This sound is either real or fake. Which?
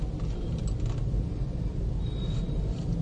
real